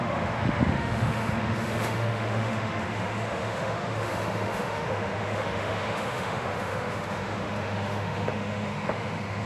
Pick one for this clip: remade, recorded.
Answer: remade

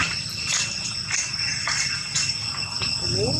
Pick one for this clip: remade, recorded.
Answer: recorded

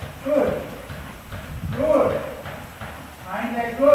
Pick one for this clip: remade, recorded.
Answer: recorded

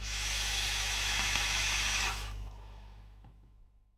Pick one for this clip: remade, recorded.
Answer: remade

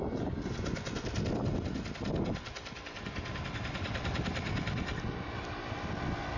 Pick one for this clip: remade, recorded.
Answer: recorded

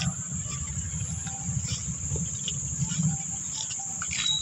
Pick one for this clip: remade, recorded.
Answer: recorded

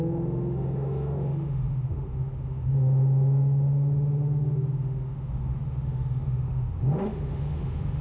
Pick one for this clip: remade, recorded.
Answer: remade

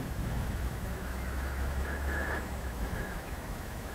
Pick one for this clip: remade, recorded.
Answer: remade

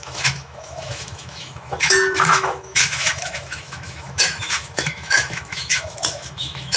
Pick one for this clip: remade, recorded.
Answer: remade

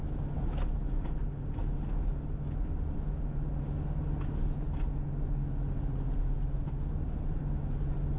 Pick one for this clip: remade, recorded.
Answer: recorded